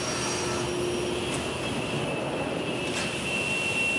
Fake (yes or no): no